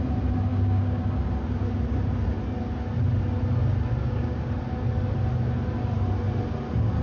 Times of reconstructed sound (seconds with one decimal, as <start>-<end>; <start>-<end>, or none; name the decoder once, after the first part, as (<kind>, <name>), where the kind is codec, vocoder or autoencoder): 0.5-1.0 (codec, DAC); 4.0-4.5